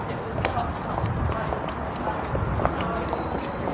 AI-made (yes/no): no